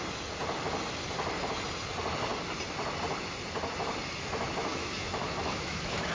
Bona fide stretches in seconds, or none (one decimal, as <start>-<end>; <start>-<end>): 0.0-4.7

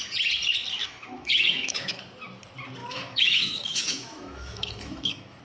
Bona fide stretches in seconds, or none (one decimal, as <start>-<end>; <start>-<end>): 0.0-0.8; 2.0-2.8

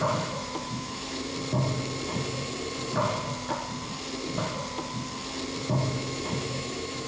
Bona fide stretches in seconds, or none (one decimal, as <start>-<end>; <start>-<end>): 1.3-5.6

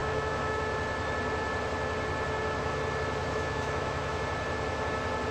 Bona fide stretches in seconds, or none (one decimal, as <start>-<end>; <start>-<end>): 0.6-3.2; 4.2-5.3

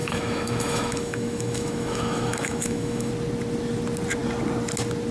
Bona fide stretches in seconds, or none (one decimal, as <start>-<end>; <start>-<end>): 3.1-5.1

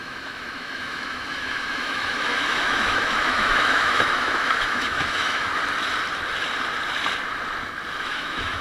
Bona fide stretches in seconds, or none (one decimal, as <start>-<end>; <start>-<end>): 5.5-8.0

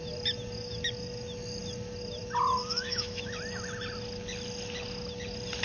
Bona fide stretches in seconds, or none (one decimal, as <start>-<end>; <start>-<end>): 0.0-2.6; 3.2-5.6

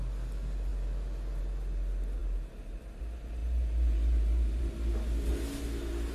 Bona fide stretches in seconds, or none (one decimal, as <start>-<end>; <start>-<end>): 0.0-6.1